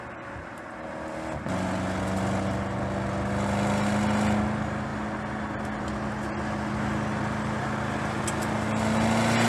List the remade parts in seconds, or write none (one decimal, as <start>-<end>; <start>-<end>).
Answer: none